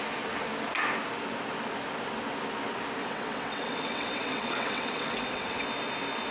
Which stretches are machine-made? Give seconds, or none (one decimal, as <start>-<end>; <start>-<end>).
3.0-5.6